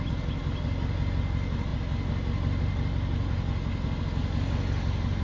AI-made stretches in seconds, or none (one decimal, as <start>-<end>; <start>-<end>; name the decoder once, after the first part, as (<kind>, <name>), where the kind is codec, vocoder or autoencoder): none